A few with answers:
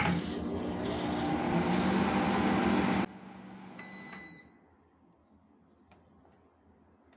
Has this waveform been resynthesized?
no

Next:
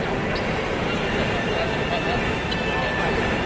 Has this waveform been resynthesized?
no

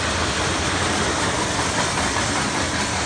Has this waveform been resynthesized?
no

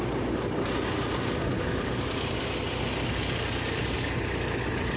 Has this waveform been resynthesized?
no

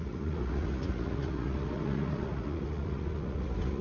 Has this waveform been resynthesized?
yes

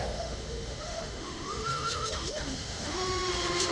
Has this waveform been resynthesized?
yes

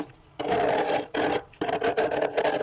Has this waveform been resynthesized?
no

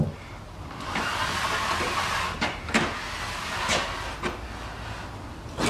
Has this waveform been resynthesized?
no